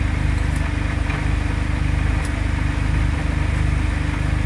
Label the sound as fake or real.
real